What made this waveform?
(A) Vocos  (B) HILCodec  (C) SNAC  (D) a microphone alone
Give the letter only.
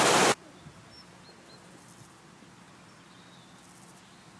D